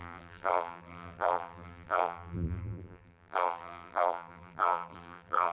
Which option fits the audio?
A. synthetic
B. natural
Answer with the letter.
A